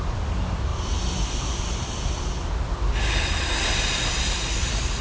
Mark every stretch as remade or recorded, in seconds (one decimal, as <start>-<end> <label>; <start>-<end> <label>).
0.0-5.0 recorded